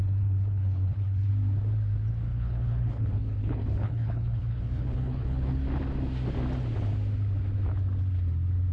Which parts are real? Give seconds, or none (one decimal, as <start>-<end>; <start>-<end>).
1.3-2.3; 5.6-8.7